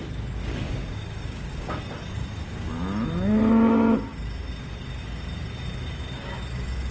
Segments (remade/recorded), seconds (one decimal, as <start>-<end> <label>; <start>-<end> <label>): 0.0-0.5 recorded; 0.5-1.8 remade; 1.8-6.9 recorded